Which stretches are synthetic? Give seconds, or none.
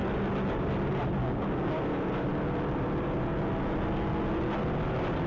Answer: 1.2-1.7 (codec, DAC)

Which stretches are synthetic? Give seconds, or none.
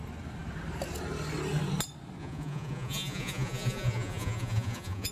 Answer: 2.2-5.1 (vocoder, Vocos)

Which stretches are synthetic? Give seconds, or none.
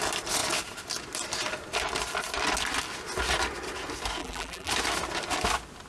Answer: 4.2-4.7 (vocoder, BigVGAN v2)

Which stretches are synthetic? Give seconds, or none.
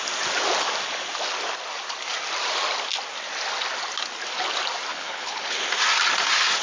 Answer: 4.9-5.7 (codec, HILCodec)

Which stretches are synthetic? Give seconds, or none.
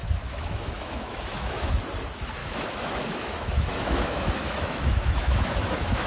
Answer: 0.0-1.7 (autoencoder, DAC-VAE); 2.4-6.1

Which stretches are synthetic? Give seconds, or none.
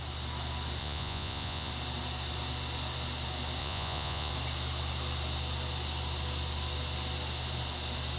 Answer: 0.8-1.7 (vocoder, Vocos); 3.6-4.3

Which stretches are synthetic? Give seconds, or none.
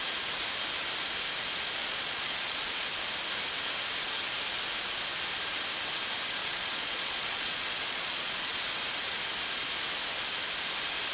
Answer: 1.8-2.9 (vocoder, Vocos); 6.4-8.6